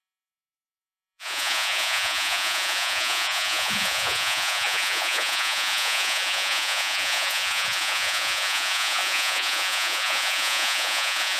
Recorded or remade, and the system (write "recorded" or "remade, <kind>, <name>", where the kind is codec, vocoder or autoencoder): remade, vocoder, Vocos